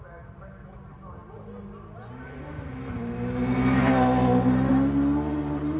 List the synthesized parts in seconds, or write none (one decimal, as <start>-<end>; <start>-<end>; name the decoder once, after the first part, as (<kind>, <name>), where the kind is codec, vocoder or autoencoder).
none

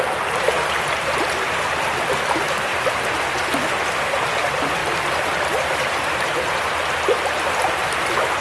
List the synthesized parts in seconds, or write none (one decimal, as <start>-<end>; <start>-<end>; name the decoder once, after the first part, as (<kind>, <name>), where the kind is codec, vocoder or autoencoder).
2.7-3.3 (vocoder, BigVGAN v2); 4.8-5.9

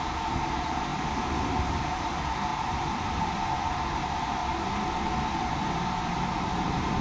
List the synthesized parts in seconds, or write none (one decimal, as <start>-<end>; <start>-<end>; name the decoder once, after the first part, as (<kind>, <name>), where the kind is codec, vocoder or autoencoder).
0.0-4.4 (vocoder, BigVGAN v2); 6.5-7.0

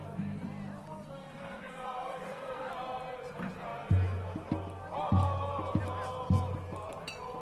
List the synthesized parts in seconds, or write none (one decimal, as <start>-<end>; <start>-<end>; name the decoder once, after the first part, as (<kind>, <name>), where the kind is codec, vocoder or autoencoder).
0.8-2.7 (codec, SNAC)

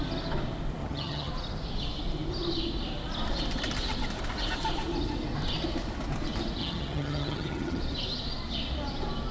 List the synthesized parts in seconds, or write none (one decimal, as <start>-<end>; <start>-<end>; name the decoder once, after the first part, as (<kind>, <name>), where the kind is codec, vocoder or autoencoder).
0.8-1.3 (vocoder, HiFi-GAN); 6.6-7.8

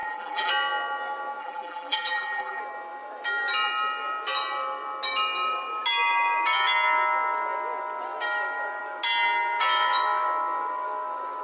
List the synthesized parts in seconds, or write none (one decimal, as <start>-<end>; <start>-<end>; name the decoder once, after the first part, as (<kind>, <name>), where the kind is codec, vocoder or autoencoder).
0.0-0.5 (vocoder, BigVGAN v2); 1.4-2.6

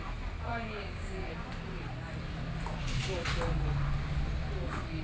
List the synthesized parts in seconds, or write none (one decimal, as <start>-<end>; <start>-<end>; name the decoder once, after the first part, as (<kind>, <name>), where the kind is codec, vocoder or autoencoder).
0.5-1.3 (codec, DAC)

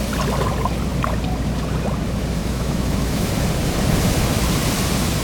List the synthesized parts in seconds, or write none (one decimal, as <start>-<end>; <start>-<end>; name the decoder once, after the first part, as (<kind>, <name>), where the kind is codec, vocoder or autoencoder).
2.4-3.3 (autoencoder, DAC-VAE)